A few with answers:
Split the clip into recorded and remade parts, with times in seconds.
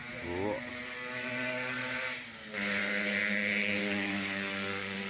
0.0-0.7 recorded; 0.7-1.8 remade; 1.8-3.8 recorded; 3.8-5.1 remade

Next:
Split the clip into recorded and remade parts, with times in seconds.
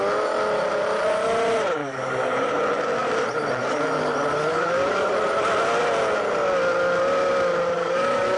0.0-1.8 recorded; 1.8-2.5 remade; 2.5-4.5 recorded; 4.5-5.1 remade; 5.1-7.8 recorded; 7.8-8.4 remade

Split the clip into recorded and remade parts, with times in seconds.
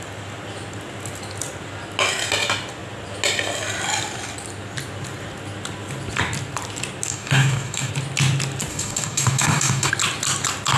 0.0-7.1 recorded; 7.1-7.9 remade; 7.9-8.7 recorded; 8.7-9.9 remade; 9.9-10.8 recorded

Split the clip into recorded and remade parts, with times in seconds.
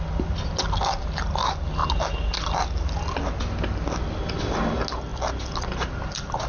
0.0-6.5 recorded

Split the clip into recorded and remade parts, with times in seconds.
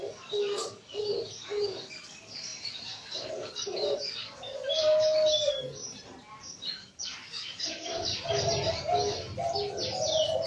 0.0-5.8 remade; 5.8-6.4 recorded; 6.4-8.1 remade; 8.1-8.7 recorded; 8.7-9.3 remade; 9.3-10.5 recorded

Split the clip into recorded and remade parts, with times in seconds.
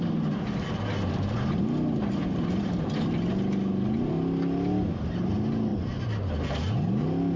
0.0-7.4 recorded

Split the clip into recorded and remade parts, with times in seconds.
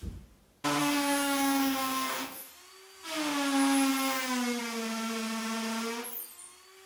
0.0-0.8 recorded; 0.8-2.5 remade; 2.5-6.9 recorded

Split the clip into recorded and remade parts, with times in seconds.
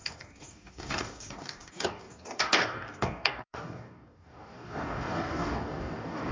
0.0-6.3 remade